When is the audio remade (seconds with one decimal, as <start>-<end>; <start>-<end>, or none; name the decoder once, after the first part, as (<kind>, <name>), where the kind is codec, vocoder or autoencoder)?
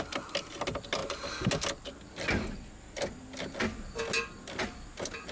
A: none